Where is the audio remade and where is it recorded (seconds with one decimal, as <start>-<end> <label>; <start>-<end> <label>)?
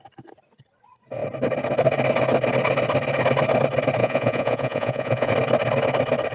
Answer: 0.0-4.0 recorded; 4.0-5.3 remade; 5.3-6.3 recorded